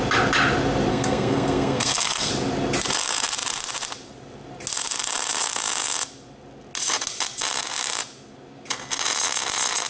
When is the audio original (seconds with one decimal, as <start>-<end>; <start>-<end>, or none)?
0.0-0.9; 2.3-9.9

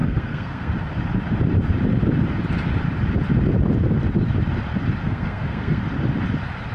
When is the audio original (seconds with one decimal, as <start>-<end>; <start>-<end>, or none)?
0.7-5.0; 5.8-6.7